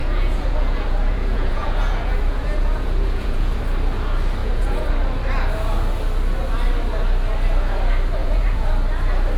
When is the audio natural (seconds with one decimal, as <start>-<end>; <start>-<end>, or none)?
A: 3.6-4.4; 4.9-8.2; 8.7-9.4